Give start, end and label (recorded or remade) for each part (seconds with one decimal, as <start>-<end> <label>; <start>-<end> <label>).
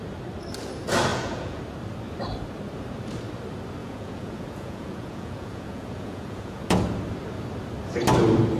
0.0-1.1 recorded; 1.1-1.6 remade; 1.6-3.8 recorded; 3.8-6.6 remade; 6.6-8.6 recorded